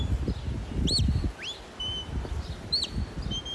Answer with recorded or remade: recorded